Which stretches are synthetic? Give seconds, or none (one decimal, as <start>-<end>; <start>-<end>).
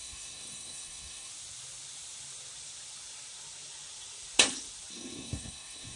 0.0-1.3; 4.9-6.0